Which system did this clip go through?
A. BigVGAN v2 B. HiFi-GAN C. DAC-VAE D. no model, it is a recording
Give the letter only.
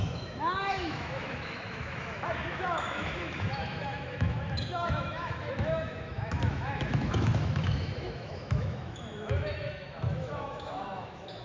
C